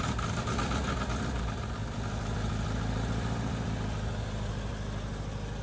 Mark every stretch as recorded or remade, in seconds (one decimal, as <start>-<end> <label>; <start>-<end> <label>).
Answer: 0.0-5.6 recorded